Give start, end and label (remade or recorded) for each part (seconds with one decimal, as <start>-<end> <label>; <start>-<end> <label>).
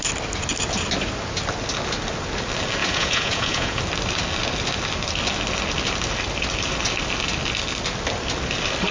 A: 0.0-2.8 recorded; 2.8-3.8 remade; 3.8-8.9 recorded